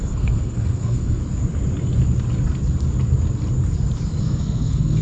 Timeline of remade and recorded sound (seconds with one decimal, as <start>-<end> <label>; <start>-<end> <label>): 0.0-1.2 remade; 1.2-4.2 recorded; 4.2-5.0 remade